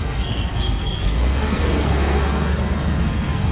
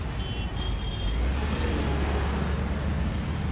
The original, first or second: second